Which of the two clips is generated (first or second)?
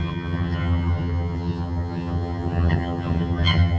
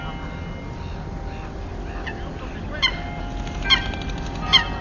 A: first